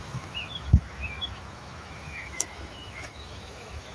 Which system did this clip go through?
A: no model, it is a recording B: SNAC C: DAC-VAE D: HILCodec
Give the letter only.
C